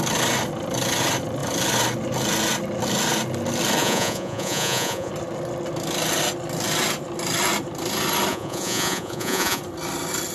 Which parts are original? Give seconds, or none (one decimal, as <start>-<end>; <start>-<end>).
0.0-3.8; 5.1-8.3; 9.6-10.3